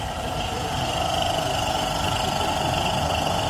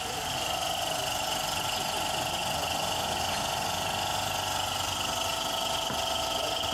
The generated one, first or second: first